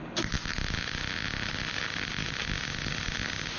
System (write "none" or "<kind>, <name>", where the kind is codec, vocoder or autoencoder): none